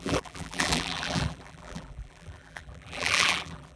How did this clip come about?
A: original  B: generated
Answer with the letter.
B